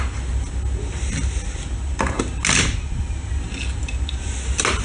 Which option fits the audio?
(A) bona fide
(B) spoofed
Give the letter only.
A